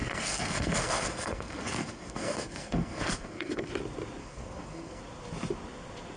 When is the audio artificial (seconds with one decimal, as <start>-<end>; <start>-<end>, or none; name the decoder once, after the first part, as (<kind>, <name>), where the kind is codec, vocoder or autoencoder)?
0.0-3.7 (codec, SNAC); 4.2-5.0